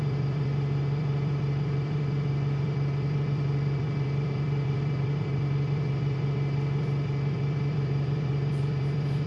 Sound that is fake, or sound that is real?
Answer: fake